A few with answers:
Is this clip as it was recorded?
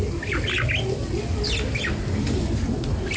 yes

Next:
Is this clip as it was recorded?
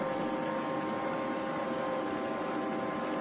yes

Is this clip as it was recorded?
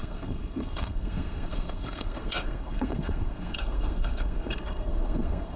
no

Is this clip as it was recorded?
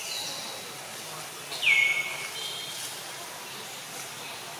yes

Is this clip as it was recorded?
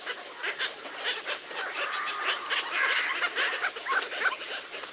yes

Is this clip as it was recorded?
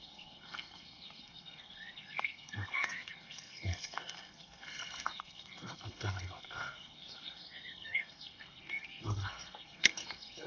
no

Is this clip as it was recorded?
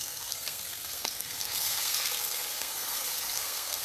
no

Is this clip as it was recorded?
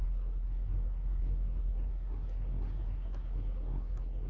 no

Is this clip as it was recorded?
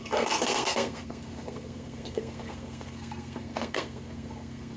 no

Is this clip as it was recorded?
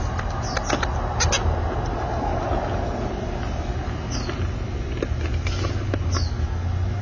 yes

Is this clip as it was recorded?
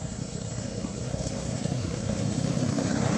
no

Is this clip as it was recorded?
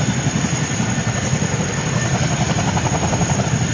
yes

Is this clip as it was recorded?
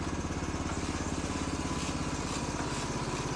yes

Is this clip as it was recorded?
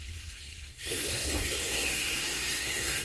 no